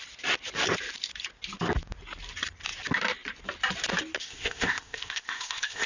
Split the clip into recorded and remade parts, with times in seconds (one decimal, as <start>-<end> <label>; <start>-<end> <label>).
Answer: 0.0-4.2 recorded; 4.2-5.9 remade